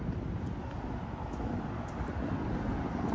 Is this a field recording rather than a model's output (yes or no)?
yes